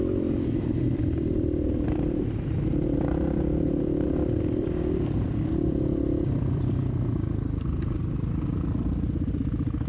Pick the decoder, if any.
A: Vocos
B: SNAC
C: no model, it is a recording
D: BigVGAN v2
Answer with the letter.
D